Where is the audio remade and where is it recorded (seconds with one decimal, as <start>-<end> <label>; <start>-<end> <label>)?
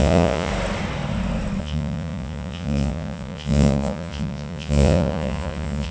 0.0-0.5 remade; 0.5-1.6 recorded; 1.6-5.9 remade